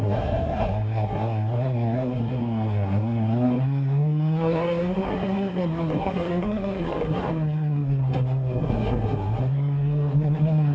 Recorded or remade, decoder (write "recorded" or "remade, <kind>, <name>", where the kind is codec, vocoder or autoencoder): remade, codec, SNAC